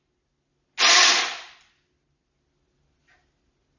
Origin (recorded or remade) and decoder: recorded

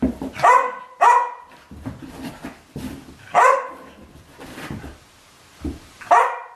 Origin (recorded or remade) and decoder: recorded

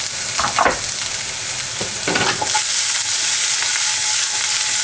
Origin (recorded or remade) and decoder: recorded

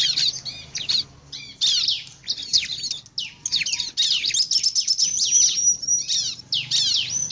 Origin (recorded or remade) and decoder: recorded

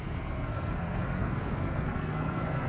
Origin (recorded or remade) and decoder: remade, codec, SNAC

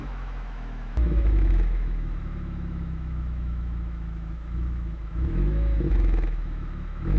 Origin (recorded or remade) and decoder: remade, autoencoder, DAC-VAE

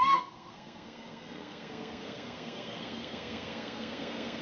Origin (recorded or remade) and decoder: remade, codec, SNAC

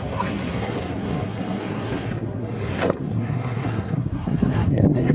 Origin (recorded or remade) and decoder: remade, codec, SNAC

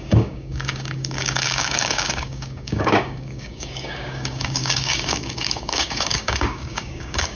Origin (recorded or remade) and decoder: remade, codec, DAC